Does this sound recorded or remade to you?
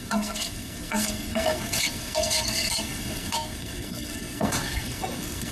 remade